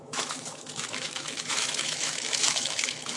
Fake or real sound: fake